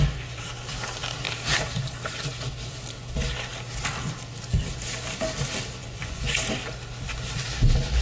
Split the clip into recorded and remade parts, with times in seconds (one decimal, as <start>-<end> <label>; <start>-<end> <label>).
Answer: 0.0-5.8 recorded; 5.8-6.3 remade; 6.3-8.0 recorded